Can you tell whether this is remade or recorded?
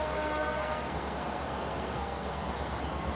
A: remade